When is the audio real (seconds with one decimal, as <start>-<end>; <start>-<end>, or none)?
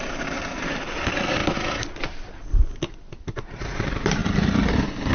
1.4-3.1; 4.2-5.1